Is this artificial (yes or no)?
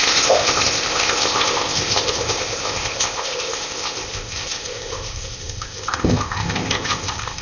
yes